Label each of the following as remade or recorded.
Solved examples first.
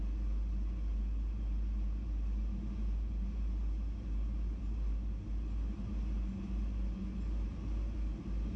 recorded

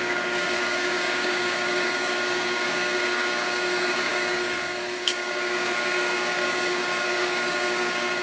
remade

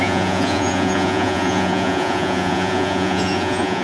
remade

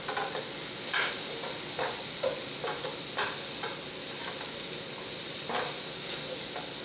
recorded